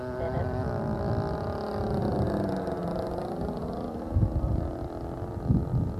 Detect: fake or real real